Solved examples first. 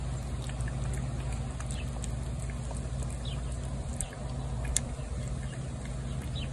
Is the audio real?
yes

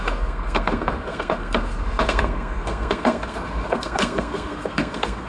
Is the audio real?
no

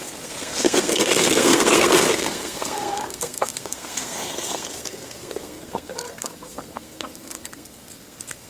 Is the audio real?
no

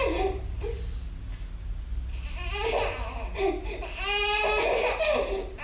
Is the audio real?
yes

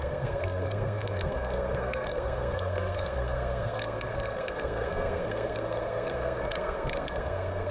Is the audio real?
no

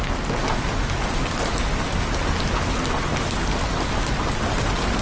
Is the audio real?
yes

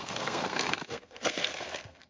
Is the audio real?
no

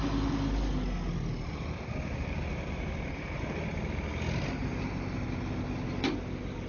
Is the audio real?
yes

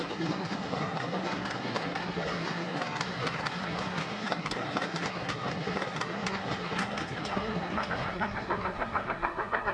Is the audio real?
no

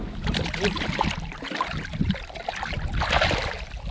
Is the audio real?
yes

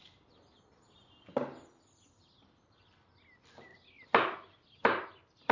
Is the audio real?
yes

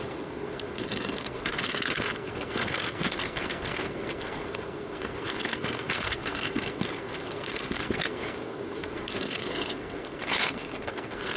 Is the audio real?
no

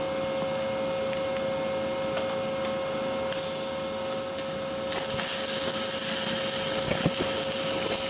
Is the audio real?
yes